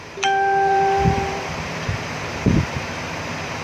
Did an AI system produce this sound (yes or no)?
yes